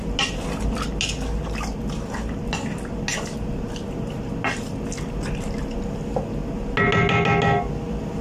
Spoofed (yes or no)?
no